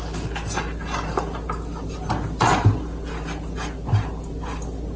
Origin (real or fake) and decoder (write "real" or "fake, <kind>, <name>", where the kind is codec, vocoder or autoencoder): real